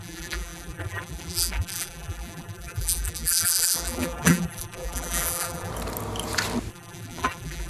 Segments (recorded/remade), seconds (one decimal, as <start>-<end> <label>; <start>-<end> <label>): 0.0-5.7 remade; 5.7-6.7 recorded; 6.7-7.7 remade